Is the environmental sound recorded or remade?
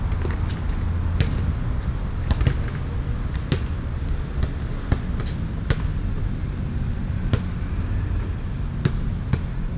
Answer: recorded